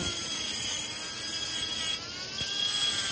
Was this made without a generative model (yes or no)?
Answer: yes